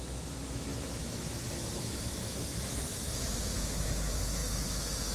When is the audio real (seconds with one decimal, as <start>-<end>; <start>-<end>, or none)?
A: none